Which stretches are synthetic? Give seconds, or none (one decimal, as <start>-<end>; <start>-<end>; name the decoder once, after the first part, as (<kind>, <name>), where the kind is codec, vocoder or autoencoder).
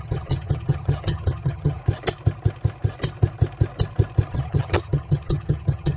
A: 0.0-1.8 (vocoder, HiFi-GAN); 4.3-6.0